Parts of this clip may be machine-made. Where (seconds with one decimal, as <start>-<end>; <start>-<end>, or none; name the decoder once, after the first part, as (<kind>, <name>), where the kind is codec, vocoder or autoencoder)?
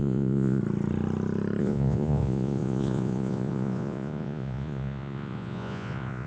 0.0-0.6 (vocoder, Vocos); 1.6-6.3